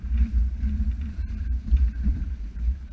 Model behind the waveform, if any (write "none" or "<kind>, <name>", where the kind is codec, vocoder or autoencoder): vocoder, BigVGAN v2